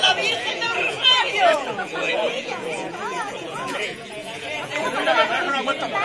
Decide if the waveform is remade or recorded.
remade